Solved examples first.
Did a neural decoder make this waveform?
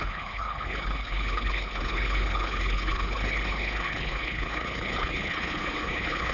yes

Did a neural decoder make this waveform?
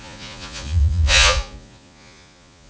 yes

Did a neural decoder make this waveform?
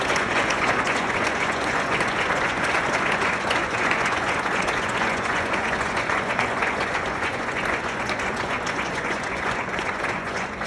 yes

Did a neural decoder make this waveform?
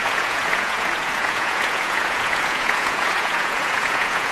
yes